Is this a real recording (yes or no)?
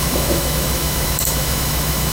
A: no